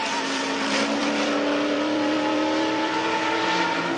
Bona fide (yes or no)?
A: no